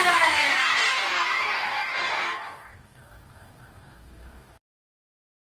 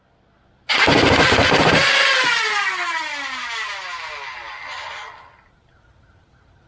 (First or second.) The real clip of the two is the second